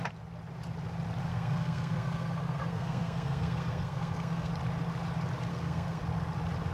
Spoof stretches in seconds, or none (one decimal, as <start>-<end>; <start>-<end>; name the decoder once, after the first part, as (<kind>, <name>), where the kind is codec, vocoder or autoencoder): 1.3-4.5 (codec, SNAC); 5.5-6.0